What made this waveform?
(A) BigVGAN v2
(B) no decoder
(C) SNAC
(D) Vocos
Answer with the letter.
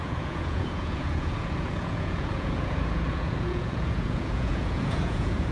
D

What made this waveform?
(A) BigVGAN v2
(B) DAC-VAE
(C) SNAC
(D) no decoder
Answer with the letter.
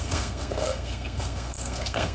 C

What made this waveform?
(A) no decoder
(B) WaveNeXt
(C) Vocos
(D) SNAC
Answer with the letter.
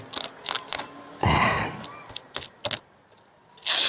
A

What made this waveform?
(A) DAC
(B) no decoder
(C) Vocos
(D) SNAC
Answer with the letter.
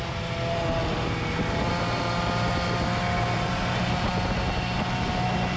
B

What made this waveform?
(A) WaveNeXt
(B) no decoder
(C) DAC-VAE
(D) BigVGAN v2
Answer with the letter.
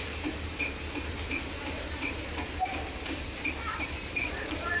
D